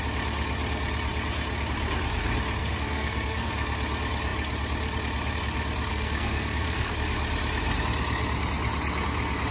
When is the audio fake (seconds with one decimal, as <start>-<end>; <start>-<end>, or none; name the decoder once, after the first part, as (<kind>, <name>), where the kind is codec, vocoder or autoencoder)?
2.6-3.5 (codec, SNAC); 5.9-6.9